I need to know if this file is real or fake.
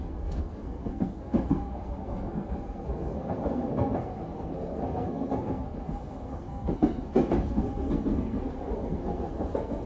fake